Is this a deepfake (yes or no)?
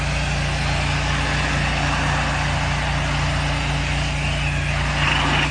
no